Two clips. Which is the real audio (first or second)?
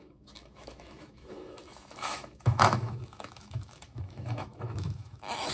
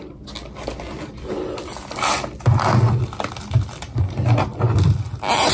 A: second